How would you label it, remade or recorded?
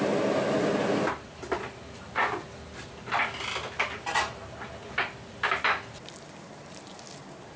recorded